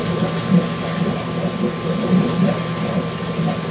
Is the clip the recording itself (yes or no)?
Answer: yes